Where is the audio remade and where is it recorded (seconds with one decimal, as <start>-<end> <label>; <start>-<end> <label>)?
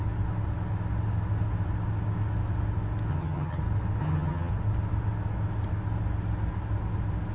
0.0-3.1 recorded; 3.1-3.6 remade; 3.6-4.0 recorded; 4.0-4.5 remade; 4.5-7.3 recorded